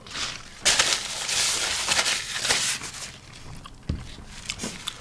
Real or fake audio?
real